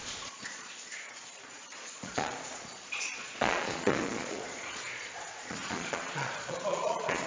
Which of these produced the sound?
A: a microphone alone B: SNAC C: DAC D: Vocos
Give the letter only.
D